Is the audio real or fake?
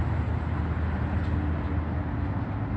real